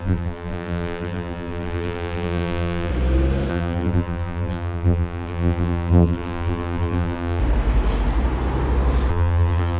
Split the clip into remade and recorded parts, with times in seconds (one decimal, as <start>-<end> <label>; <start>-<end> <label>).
0.0-2.9 remade; 2.9-3.5 recorded; 3.5-7.4 remade; 7.4-9.1 recorded; 9.1-9.8 remade

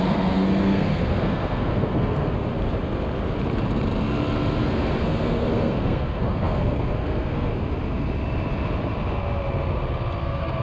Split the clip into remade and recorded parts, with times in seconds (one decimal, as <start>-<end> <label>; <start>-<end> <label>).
0.0-2.5 remade; 2.5-4.6 recorded; 4.6-7.5 remade; 7.5-10.2 recorded; 10.2-10.6 remade

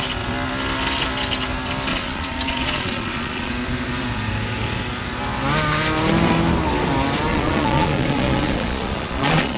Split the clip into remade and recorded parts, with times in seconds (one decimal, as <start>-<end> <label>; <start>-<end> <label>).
0.0-1.9 recorded; 1.9-3.5 remade; 3.5-7.3 recorded; 7.3-9.6 remade

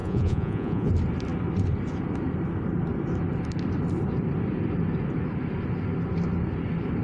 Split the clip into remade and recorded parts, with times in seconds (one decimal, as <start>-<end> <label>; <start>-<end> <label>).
0.0-0.9 remade; 0.9-7.0 recorded

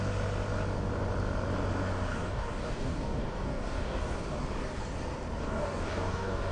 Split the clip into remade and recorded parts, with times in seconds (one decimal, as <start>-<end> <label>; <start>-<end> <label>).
0.0-2.1 recorded; 2.1-4.4 remade; 4.4-5.4 recorded; 5.4-6.5 remade

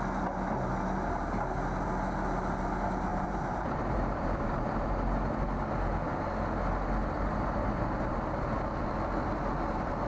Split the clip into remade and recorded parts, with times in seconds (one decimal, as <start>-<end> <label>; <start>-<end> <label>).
0.0-3.1 recorded; 3.1-4.9 remade; 4.9-10.1 recorded

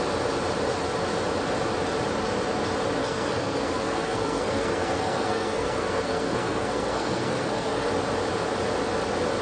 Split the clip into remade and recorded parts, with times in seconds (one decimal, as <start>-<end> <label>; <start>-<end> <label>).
0.0-3.0 recorded; 3.0-7.9 remade; 7.9-9.4 recorded